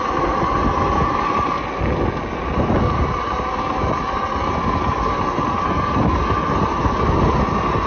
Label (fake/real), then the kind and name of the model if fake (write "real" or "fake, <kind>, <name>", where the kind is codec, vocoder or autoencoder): real